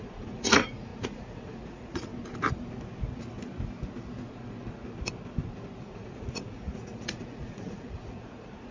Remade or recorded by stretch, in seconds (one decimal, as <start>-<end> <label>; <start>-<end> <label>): 0.0-2.1 remade; 2.1-5.8 recorded; 5.8-8.7 remade